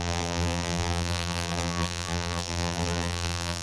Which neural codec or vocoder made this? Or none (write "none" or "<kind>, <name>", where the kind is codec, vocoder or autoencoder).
vocoder, BigVGAN v2